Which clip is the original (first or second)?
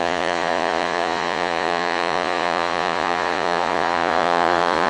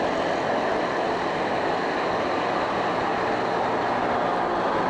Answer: second